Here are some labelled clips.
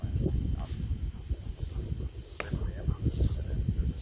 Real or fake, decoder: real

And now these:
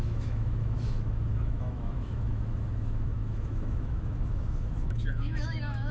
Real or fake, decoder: fake, autoencoder, DAC-VAE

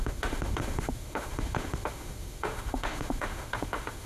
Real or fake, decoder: fake, autoencoder, DAC-VAE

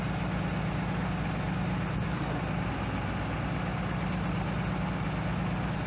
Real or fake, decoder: real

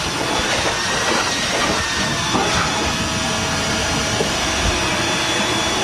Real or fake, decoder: real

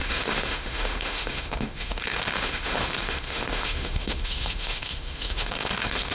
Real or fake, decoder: fake, autoencoder, DAC-VAE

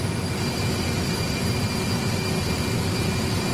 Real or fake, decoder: real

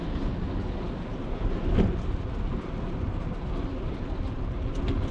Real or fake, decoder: real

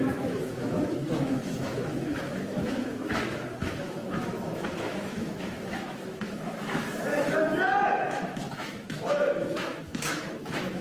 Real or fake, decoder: fake, autoencoder, DAC-VAE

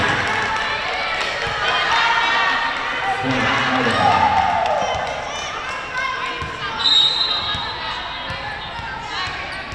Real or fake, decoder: real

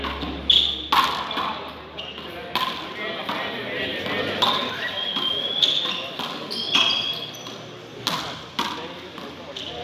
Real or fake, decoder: real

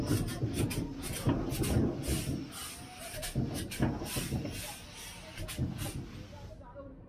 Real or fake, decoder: real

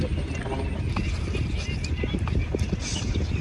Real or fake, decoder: real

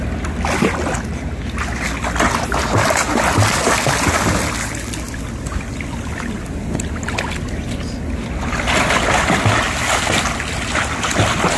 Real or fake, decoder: real